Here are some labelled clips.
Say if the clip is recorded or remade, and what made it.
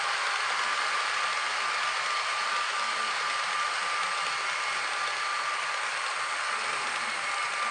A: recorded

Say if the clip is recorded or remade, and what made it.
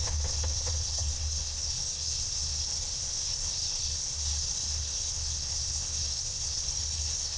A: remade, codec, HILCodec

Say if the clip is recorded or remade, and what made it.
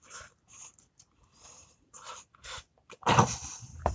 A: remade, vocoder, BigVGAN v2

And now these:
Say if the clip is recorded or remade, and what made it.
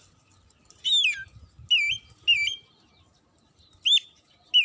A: recorded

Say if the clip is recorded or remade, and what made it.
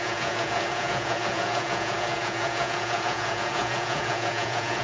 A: remade, vocoder, Vocos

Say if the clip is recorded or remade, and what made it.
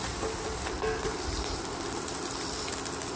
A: recorded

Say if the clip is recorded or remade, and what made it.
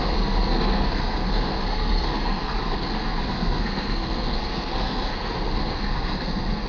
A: remade, codec, SNAC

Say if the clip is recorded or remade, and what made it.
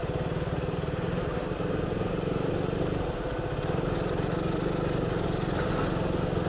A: recorded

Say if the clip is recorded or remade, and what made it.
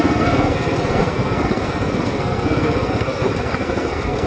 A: remade, codec, SNAC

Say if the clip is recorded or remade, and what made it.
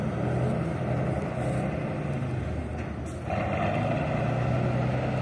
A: recorded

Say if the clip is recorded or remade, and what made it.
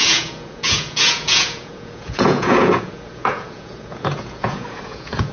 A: remade, vocoder, Vocos